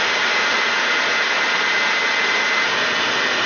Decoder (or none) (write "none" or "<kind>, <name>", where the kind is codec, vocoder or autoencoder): none